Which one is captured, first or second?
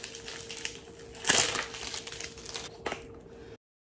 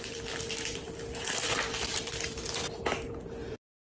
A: first